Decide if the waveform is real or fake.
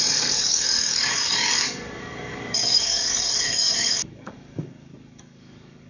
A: fake